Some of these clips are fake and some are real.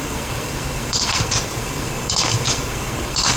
fake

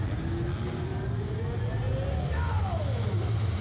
real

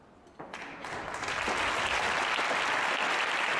real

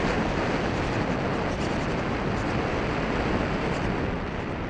real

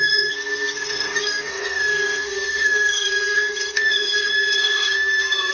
fake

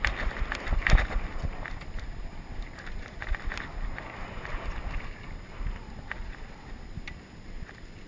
real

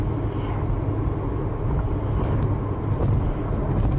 real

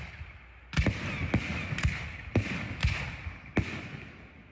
real